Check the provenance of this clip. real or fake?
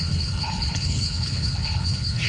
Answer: fake